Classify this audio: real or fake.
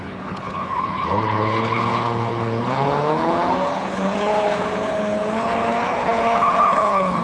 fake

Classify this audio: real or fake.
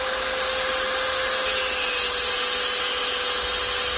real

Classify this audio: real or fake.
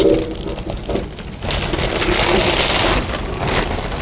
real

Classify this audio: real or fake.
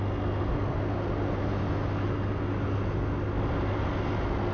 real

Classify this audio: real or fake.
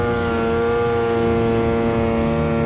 real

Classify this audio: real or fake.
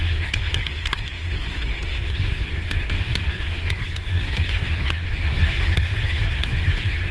fake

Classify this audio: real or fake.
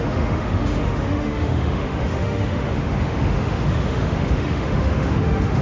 fake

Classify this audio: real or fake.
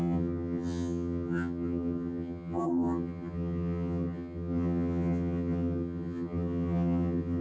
fake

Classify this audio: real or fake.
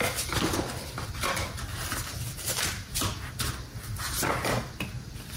real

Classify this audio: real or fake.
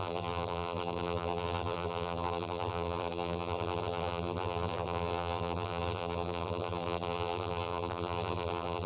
fake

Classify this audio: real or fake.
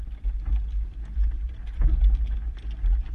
real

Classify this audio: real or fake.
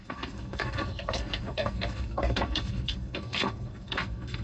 fake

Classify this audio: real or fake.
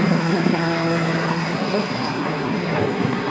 fake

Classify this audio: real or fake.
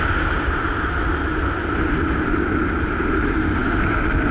real